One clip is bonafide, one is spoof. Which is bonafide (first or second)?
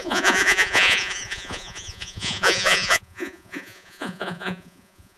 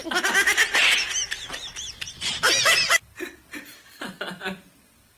second